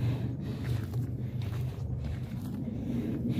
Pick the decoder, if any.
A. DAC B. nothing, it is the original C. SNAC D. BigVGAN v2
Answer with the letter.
D